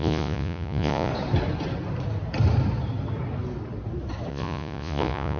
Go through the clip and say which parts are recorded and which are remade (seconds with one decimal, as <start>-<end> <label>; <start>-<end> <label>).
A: 0.0-1.1 remade; 1.1-4.3 recorded; 4.3-5.4 remade